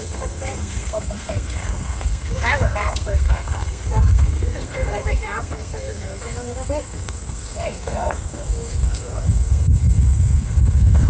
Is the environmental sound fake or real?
fake